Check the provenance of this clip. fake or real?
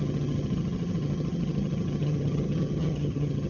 fake